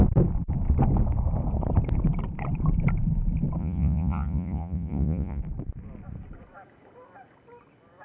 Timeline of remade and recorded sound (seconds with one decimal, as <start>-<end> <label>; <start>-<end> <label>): 0.0-3.6 recorded; 3.6-5.4 remade; 5.4-8.0 recorded